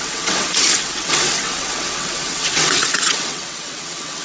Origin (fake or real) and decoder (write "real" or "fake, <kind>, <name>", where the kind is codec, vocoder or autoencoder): fake, vocoder, WaveNeXt